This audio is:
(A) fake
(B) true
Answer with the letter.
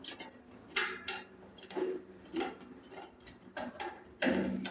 A